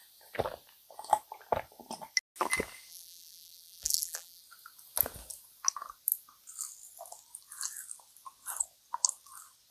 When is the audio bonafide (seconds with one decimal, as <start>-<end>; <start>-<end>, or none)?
0.0-2.9; 4.4-9.7